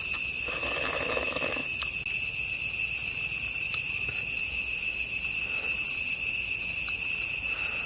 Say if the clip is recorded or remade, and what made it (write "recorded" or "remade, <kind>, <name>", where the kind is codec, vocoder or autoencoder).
recorded